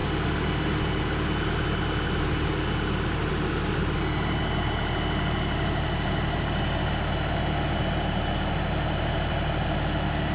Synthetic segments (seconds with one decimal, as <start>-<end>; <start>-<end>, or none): none